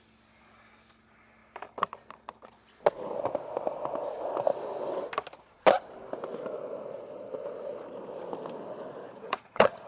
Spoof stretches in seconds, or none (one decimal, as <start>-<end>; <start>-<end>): 9.1-9.9